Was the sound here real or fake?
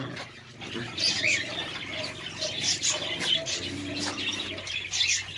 real